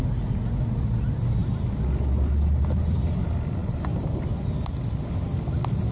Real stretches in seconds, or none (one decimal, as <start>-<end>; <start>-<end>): 0.0-3.6; 4.2-5.9